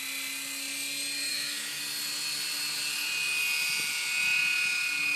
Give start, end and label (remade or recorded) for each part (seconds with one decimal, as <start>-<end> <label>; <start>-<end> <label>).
0.0-1.3 recorded; 1.3-1.8 remade; 1.8-5.2 recorded